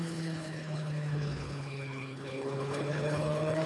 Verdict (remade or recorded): remade